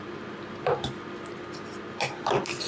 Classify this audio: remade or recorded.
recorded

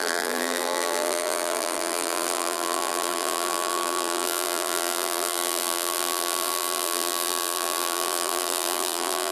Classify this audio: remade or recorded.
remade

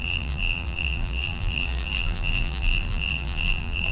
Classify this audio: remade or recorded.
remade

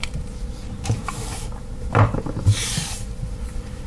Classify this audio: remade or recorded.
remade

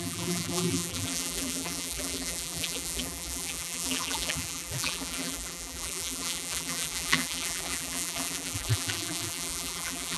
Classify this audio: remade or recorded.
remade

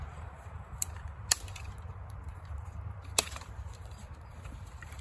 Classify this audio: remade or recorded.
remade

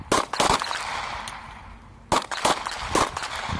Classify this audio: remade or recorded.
recorded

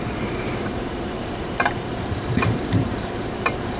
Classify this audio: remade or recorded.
remade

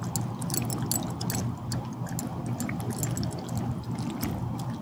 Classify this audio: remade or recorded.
recorded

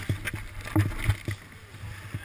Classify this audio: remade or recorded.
recorded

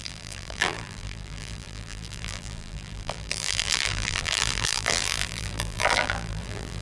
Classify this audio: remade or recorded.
remade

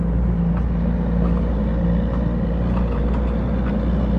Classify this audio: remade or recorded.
recorded